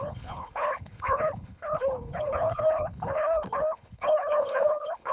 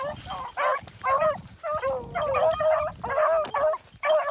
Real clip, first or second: second